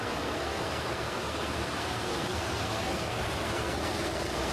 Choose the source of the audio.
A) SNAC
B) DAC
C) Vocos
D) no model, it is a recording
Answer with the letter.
A